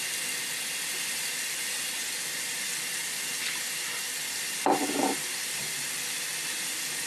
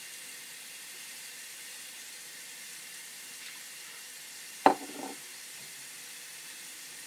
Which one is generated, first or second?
second